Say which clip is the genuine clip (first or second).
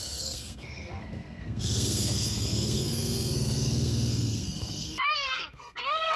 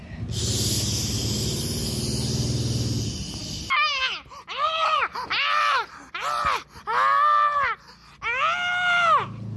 second